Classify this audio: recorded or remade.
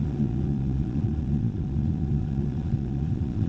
remade